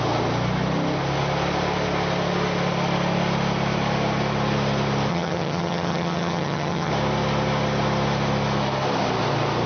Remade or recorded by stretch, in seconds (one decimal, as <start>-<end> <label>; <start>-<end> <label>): 0.0-5.1 recorded; 5.1-6.9 remade; 6.9-9.7 recorded